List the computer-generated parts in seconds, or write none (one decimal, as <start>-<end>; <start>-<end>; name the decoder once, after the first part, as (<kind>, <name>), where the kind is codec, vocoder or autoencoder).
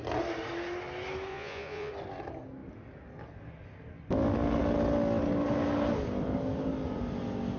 1.3-1.9 (vocoder, Vocos)